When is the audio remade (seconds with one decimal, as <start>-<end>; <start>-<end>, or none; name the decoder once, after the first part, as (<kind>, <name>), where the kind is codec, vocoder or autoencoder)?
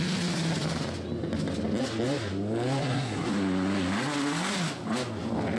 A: 2.8-3.3 (codec, SNAC)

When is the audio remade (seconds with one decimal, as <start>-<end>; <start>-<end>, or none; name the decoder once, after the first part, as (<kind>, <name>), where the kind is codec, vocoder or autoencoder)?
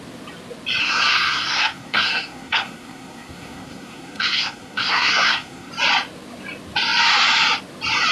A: 0.8-5.7 (codec, SNAC)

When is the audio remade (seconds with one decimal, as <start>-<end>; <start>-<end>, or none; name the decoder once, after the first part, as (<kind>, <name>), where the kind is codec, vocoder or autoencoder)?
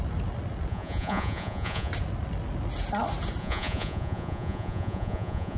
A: 0.7-1.9 (vocoder, Vocos); 3.4-5.6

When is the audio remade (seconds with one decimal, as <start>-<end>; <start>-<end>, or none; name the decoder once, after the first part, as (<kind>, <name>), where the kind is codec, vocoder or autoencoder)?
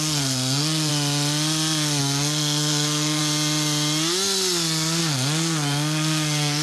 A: 0.0-0.9 (codec, SNAC); 2.0-3.2; 5.0-6.6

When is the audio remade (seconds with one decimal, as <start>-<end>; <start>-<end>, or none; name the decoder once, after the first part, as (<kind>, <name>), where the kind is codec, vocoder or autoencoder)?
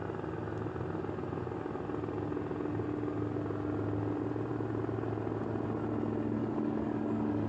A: 6.4-7.5 (codec, DAC)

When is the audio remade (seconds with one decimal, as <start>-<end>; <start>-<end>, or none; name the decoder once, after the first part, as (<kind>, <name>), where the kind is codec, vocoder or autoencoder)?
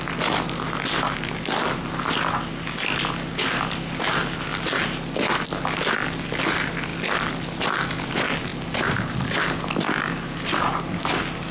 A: none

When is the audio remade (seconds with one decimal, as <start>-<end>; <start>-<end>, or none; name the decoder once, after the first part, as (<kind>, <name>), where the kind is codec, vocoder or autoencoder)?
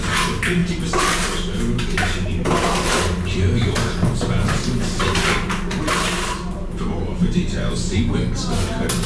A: none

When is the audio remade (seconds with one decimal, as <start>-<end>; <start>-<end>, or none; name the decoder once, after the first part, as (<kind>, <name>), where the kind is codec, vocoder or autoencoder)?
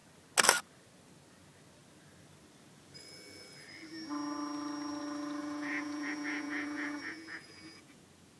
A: 5.4-8.0 (vocoder, Vocos)